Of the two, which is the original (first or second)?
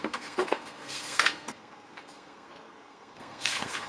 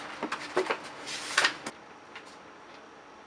second